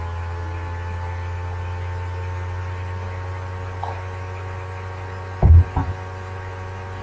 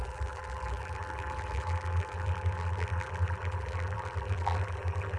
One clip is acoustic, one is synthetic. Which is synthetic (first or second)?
second